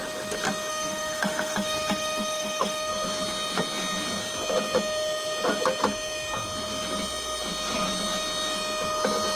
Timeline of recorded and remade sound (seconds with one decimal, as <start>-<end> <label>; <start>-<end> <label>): 0.0-0.7 recorded; 0.7-2.9 remade; 2.9-9.4 recorded